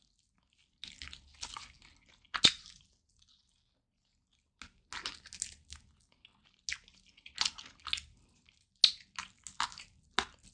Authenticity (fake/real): real